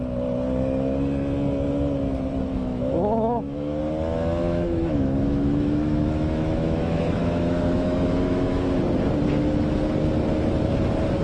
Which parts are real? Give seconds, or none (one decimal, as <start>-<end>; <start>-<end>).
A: 0.0-2.5; 3.8-4.4; 8.8-11.2